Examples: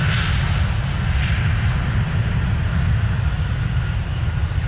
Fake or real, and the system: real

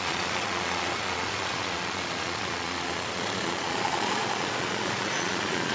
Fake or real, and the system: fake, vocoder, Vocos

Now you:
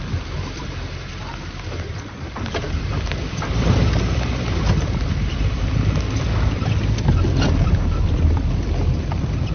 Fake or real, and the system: fake, vocoder, BigVGAN v2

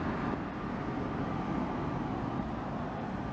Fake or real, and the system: real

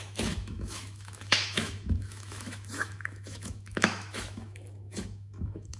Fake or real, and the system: fake, autoencoder, DAC-VAE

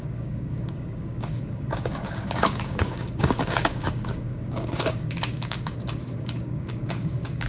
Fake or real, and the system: fake, codec, DAC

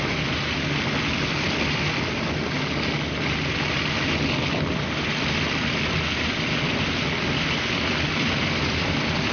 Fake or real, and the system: real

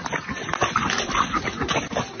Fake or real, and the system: real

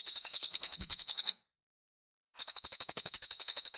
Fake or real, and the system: fake, codec, SNAC